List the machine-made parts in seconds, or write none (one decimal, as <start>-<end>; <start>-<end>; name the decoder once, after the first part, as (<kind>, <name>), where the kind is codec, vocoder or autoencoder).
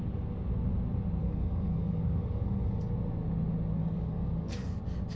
1.2-2.9 (codec, DAC); 3.8-4.8